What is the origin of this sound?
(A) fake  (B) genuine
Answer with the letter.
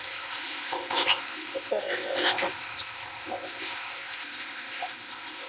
A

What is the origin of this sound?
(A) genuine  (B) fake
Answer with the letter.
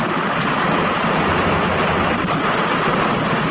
A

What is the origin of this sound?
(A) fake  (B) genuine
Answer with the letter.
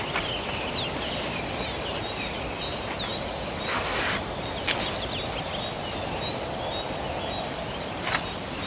B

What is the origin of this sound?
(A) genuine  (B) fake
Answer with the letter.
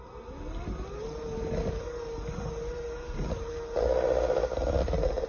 A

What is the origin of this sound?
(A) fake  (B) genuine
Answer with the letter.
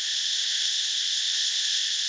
A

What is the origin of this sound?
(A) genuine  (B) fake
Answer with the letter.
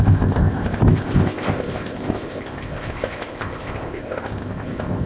B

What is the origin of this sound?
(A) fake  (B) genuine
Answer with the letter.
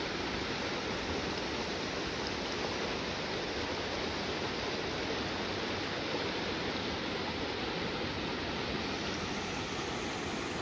B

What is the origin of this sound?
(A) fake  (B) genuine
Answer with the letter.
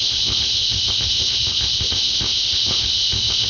A